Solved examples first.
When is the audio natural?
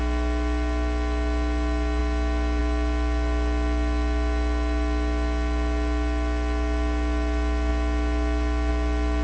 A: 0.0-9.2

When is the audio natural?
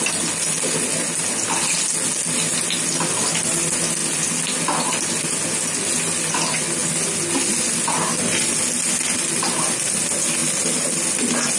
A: 0.0-11.6